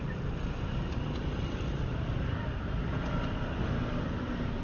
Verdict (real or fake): fake